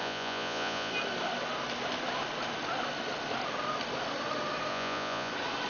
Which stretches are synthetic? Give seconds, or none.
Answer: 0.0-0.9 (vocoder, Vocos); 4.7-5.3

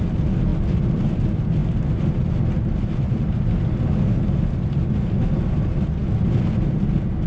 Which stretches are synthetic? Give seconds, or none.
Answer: none